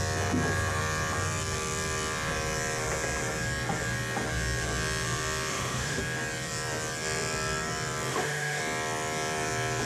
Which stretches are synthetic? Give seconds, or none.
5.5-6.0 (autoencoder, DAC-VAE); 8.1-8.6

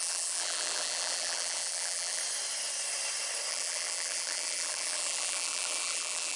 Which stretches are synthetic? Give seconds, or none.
0.0-2.2 (vocoder, BigVGAN v2); 3.5-6.4